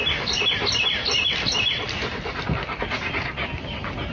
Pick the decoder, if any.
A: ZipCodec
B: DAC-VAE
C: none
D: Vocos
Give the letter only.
C